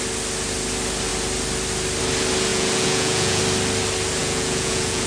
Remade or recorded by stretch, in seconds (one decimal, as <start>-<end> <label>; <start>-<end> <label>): 0.0-2.5 recorded; 2.5-3.4 remade; 3.4-4.2 recorded; 4.2-5.1 remade